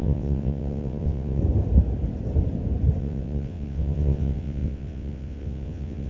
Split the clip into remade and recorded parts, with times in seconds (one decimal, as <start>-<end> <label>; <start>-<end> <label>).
0.0-1.4 remade; 1.4-3.0 recorded; 3.0-6.1 remade